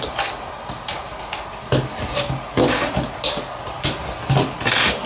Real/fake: real